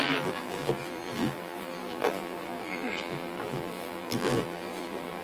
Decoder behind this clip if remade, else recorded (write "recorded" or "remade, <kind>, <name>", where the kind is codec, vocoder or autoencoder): remade, vocoder, BigVGAN v2